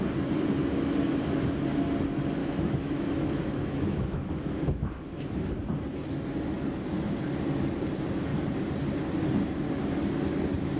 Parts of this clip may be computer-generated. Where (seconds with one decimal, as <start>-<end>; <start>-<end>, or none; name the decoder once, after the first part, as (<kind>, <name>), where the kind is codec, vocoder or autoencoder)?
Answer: 2.4-5.5 (autoencoder, DAC-VAE)